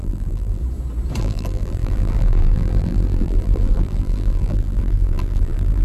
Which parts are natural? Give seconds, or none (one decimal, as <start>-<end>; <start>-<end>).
0.6-1.2